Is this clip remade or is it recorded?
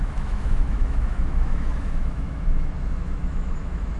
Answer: remade